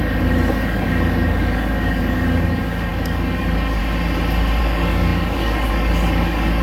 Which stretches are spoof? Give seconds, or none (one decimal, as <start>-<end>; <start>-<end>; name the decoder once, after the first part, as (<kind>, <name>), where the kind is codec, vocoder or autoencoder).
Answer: 0.0-3.8 (codec, DAC); 4.6-6.6